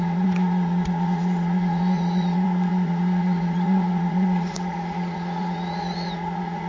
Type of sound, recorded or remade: remade